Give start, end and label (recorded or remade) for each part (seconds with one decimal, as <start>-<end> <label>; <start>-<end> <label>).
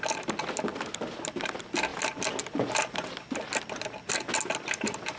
0.0-5.2 recorded